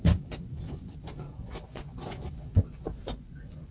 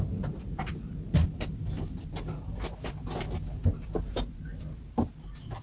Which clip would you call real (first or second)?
second